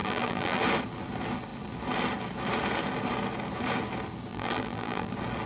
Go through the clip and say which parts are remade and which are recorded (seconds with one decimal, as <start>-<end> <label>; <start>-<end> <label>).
0.0-0.6 remade; 0.6-4.3 recorded; 4.3-5.1 remade; 5.1-5.5 recorded